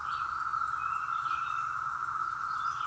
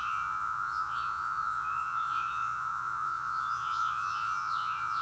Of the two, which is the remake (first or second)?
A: second